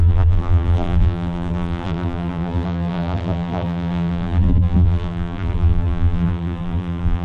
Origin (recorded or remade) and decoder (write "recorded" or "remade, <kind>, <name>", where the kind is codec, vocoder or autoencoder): remade, vocoder, BigVGAN v2